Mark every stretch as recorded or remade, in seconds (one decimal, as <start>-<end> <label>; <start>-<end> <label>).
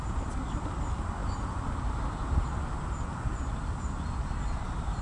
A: 0.0-5.0 recorded